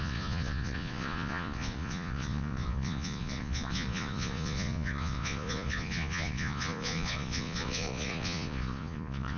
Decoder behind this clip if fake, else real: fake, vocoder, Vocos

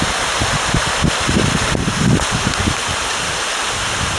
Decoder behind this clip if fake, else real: real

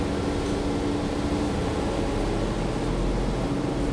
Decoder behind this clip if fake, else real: real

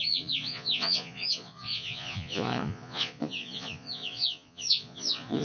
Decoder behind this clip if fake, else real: fake, vocoder, Vocos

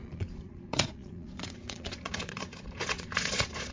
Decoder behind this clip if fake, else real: fake, vocoder, Vocos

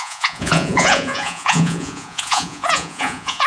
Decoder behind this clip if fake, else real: fake, vocoder, Vocos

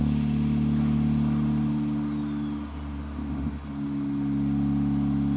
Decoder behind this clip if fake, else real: real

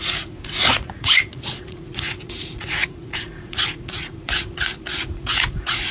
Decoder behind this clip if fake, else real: fake, vocoder, Vocos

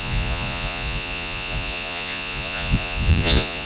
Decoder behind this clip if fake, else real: fake, vocoder, Vocos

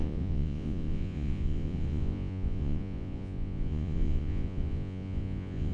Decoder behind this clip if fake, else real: fake, vocoder, Vocos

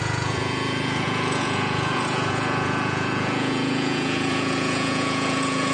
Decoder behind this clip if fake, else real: fake, vocoder, Vocos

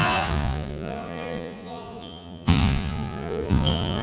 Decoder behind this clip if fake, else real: fake, vocoder, Vocos